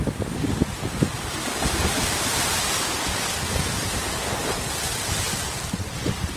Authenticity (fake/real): real